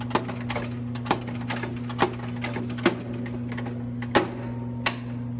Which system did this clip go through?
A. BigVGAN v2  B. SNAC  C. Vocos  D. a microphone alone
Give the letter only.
D